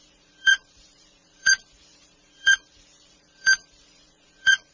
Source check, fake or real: fake